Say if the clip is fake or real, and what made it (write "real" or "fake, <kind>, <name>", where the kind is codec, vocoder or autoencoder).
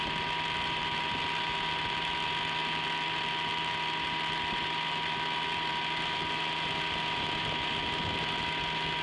real